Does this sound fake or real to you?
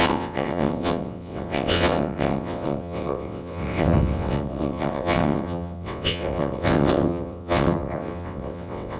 fake